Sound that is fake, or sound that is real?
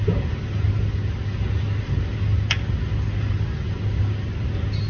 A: real